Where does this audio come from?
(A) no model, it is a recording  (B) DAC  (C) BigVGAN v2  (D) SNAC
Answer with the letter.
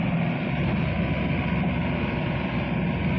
A